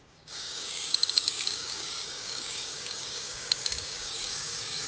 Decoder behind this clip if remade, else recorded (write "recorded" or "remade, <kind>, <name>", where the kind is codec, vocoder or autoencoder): remade, codec, DAC